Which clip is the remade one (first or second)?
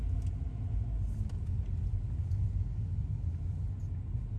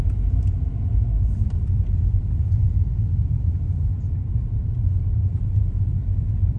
second